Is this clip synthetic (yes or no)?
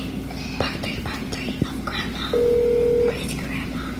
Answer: no